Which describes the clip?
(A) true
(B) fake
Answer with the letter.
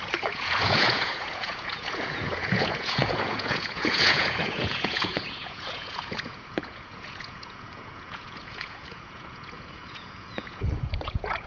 B